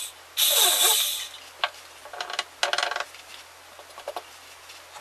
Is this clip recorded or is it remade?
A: recorded